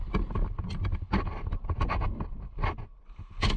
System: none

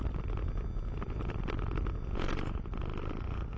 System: none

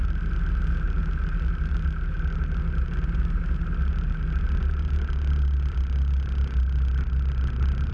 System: none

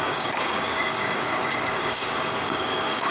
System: codec, DAC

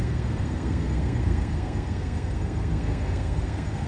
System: codec, SNAC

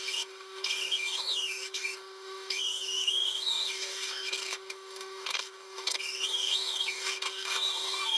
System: codec, DAC